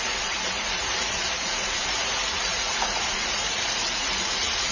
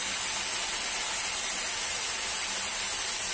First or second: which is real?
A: second